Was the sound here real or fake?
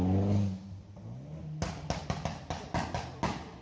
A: real